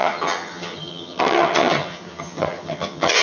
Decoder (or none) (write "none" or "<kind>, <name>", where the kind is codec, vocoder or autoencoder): vocoder, HiFi-GAN